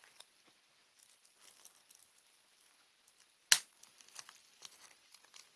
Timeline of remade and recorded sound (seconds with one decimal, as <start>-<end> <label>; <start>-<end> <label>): 0.0-5.6 recorded